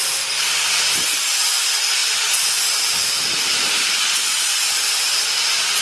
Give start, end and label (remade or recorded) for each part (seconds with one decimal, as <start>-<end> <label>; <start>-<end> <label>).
0.0-5.8 recorded